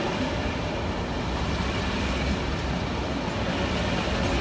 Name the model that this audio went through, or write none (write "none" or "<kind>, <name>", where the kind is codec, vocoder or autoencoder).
none